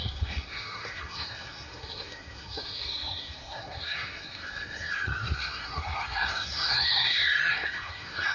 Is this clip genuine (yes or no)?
no